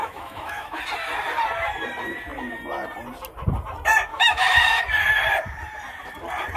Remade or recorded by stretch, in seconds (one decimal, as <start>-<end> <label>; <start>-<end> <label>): 0.0-0.8 remade; 0.8-4.1 recorded; 4.1-4.8 remade; 4.8-6.6 recorded